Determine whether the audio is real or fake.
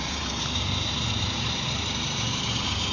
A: fake